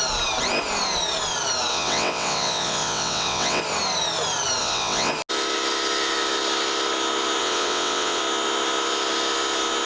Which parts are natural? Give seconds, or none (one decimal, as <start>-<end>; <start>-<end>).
0.0-1.7; 3.6-4.6; 5.1-7.4; 8.2-9.9

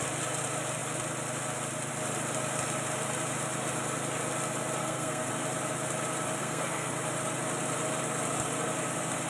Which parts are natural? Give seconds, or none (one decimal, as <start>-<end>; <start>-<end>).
0.0-4.8; 5.3-6.4; 6.9-9.3

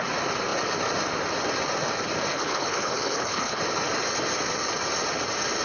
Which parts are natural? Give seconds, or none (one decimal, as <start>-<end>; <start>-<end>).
0.0-2.3; 3.6-5.6

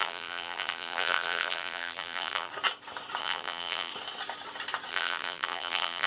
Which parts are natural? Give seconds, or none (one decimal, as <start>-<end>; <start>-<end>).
2.5-3.2; 3.9-4.9

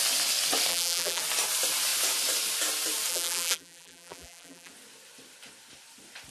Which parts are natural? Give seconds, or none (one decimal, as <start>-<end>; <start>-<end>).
0.0-0.7; 1.2-3.1; 4.7-6.3

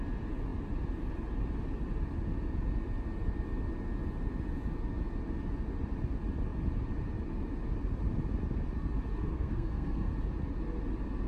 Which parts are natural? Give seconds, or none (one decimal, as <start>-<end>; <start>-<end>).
0.0-9.3; 10.1-11.3